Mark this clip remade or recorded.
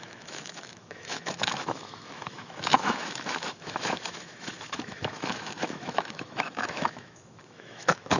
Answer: remade